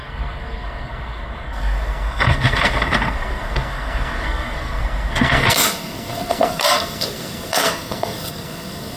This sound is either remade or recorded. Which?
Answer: remade